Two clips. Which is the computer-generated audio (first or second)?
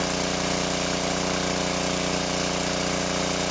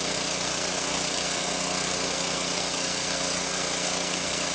second